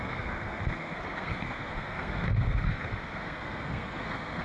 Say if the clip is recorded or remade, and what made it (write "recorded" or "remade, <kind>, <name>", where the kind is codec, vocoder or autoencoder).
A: remade, codec, SNAC